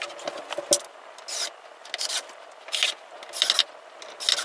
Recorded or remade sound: recorded